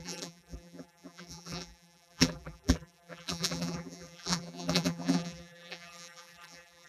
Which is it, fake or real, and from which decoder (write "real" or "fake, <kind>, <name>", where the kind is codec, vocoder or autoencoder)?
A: fake, vocoder, BigVGAN v2